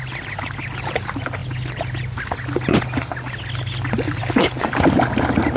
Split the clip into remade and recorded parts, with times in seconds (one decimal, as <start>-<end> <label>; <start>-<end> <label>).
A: 0.0-5.6 recorded